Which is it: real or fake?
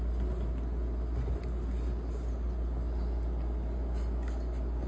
real